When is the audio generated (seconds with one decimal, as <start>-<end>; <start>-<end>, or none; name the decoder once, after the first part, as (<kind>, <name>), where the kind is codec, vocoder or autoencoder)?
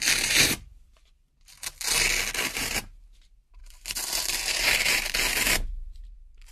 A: 0.0-1.0 (vocoder, BigVGAN v2); 2.5-6.5